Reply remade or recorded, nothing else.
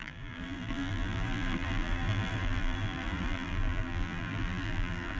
remade